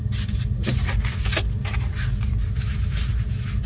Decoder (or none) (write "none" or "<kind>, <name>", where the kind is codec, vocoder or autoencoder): none